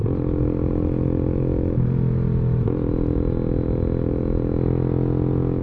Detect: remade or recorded recorded